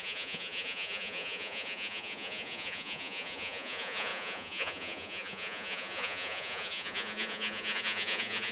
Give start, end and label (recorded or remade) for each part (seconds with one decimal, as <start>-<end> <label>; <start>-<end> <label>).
0.0-8.5 remade